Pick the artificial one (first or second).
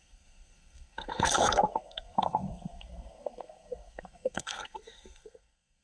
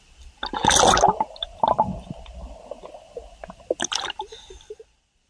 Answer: first